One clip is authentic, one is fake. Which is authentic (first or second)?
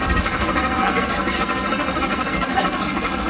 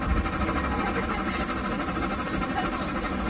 second